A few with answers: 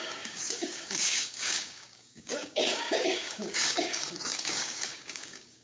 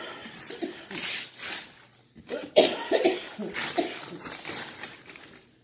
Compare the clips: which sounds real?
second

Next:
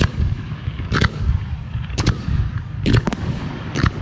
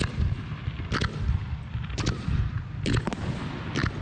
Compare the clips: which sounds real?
second